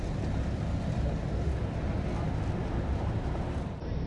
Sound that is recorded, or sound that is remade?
recorded